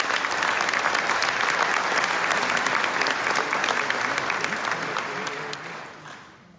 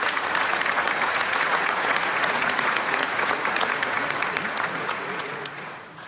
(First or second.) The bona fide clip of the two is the first